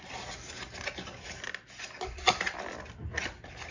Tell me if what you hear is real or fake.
real